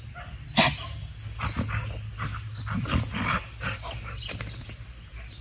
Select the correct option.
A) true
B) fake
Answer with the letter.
A